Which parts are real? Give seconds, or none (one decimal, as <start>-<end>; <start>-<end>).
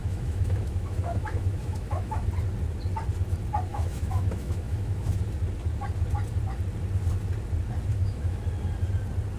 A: 2.3-3.7; 5.2-7.9; 8.4-9.4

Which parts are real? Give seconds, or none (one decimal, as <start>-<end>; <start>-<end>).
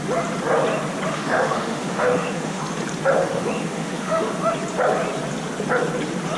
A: 0.0-1.1; 2.6-3.2; 4.5-6.4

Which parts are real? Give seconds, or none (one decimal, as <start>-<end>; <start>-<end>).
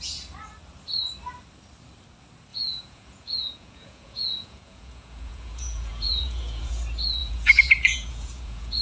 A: 0.0-2.5; 6.8-7.2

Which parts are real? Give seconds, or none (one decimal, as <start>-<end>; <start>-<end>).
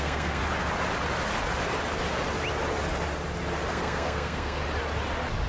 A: 0.4-3.7; 4.6-5.5